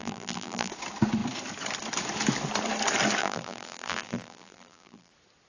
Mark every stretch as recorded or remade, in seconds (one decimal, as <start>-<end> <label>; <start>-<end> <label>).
0.0-0.7 remade; 0.7-3.2 recorded; 3.2-5.1 remade; 5.1-5.5 recorded